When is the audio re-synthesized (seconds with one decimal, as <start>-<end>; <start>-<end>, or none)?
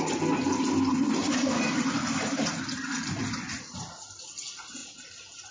0.9-2.6